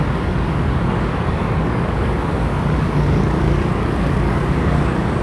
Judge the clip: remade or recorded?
remade